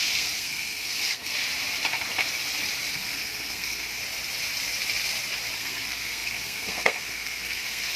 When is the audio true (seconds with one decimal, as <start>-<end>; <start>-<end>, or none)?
1.3-2.9; 4.0-5.6